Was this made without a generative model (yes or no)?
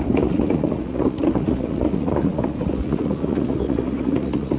no